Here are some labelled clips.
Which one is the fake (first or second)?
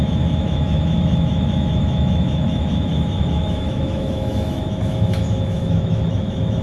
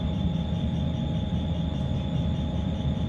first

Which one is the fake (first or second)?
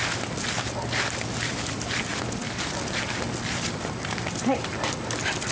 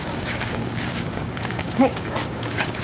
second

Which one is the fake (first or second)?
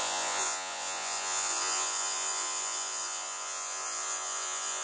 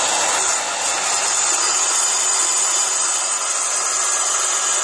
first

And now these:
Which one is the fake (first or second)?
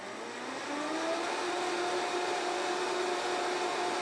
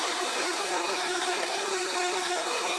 second